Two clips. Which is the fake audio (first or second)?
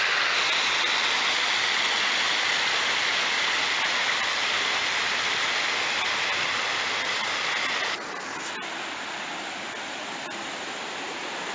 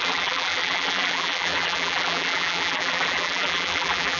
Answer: second